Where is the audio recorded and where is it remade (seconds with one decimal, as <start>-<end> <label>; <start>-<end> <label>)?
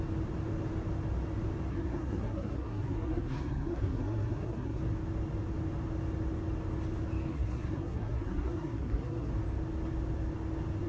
0.0-1.7 recorded; 1.7-4.8 remade; 4.8-7.3 recorded; 7.3-9.3 remade; 9.3-10.9 recorded